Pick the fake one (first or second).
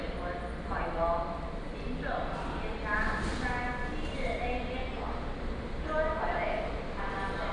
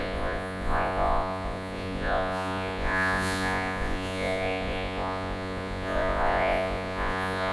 second